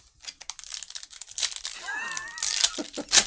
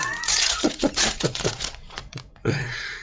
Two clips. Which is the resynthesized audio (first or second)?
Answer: second